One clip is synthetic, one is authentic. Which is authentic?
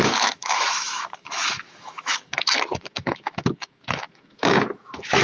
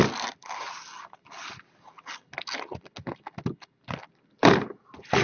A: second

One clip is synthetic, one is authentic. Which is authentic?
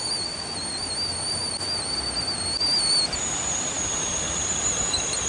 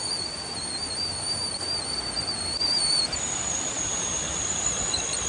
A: first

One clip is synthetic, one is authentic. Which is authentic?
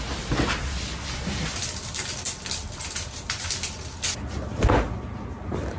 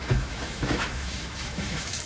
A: first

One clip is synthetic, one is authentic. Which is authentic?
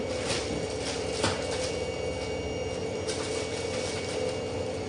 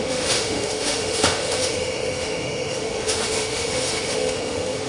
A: first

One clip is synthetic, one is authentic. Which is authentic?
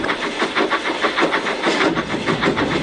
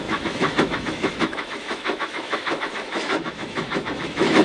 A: first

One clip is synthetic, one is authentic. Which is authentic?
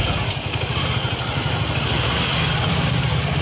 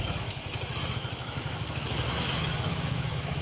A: first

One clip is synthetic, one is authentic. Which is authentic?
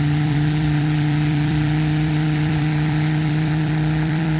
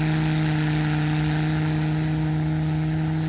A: second